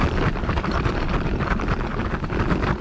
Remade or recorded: remade